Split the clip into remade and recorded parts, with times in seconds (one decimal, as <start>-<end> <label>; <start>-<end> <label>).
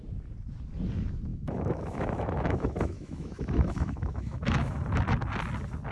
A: 0.0-1.3 recorded; 1.3-4.8 remade; 4.8-5.9 recorded